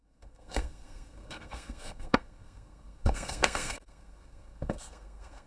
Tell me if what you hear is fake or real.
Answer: fake